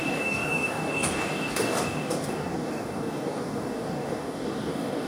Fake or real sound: fake